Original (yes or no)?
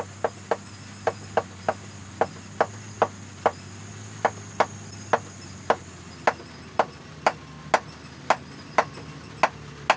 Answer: yes